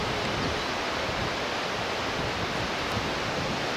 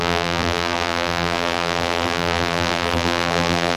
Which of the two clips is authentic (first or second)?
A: first